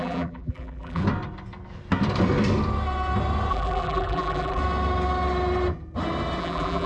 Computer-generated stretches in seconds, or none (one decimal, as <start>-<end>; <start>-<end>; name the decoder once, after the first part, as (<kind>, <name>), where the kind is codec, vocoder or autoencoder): 0.0-1.0 (vocoder, BigVGAN v2); 3.5-4.6; 6.4-6.9